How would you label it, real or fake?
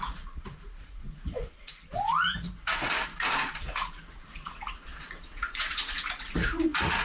fake